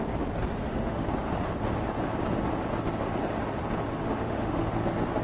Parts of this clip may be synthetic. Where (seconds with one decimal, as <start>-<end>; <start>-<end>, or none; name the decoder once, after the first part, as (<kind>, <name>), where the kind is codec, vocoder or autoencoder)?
0.6-1.1 (autoencoder, DAC-VAE); 4.0-4.7